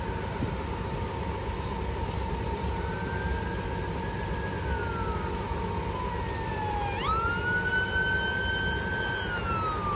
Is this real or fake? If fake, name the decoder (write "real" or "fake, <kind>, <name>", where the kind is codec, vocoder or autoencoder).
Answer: real